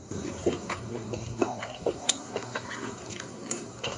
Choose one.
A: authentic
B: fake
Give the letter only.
B